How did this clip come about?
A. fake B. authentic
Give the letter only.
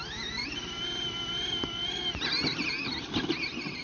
B